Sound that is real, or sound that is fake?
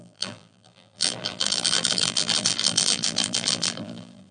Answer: fake